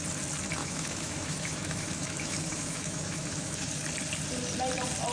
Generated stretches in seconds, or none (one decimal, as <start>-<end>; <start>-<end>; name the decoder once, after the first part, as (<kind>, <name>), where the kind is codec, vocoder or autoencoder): 0.6-3.7 (autoencoder, DAC-VAE)